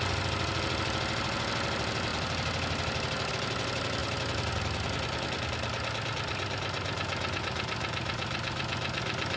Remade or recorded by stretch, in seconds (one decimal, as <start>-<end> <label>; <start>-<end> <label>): 0.0-9.4 recorded